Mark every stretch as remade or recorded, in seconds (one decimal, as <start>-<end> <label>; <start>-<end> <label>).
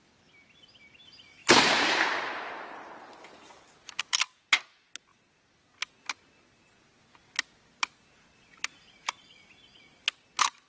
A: 0.0-10.7 recorded